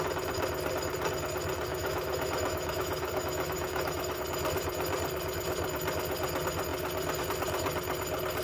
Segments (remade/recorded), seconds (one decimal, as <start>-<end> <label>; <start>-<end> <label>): 0.0-1.7 recorded; 1.7-4.2 remade; 4.2-8.4 recorded